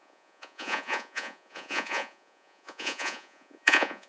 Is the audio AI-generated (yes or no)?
yes